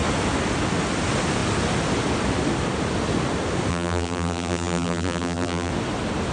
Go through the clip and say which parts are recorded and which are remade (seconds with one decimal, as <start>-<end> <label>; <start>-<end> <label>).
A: 0.0-3.7 recorded; 3.7-5.7 remade; 5.7-6.3 recorded